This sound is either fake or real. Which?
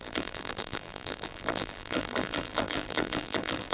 fake